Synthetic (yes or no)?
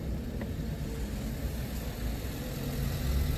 no